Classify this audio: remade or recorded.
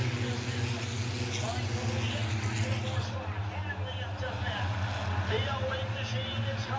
recorded